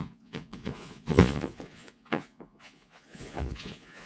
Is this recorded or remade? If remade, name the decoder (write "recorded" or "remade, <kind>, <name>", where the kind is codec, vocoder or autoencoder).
remade, vocoder, Vocos